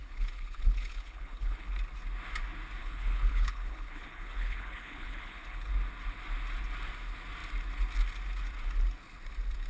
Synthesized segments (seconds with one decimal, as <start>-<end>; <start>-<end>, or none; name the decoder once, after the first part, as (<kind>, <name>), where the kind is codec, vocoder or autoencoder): 0.0-1.7 (codec, HILCodec); 2.8-5.7